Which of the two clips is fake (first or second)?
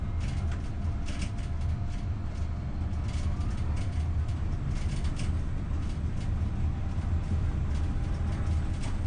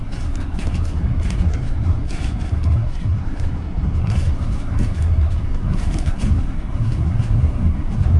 second